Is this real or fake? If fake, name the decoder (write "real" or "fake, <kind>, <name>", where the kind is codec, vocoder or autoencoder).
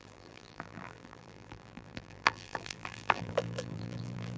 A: fake, vocoder, BigVGAN v2